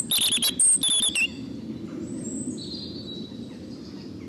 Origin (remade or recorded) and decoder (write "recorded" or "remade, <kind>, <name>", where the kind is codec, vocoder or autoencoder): recorded